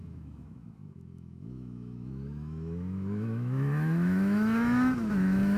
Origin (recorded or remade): remade